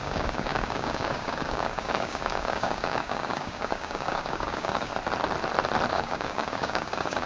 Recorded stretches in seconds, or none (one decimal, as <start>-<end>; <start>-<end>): 4.9-5.9